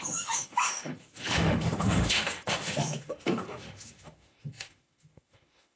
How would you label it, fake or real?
fake